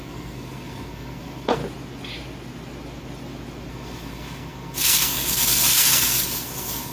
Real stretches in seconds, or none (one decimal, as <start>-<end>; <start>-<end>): 1.6-3.7